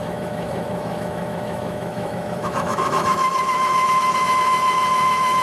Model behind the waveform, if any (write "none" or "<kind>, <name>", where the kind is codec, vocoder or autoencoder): autoencoder, DAC-VAE